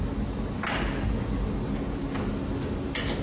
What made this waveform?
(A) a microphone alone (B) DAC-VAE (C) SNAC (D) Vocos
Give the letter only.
A